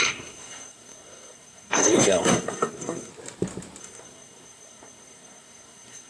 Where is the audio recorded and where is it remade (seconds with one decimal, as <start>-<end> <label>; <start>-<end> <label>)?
0.0-3.1 remade; 3.1-3.8 recorded; 3.8-6.1 remade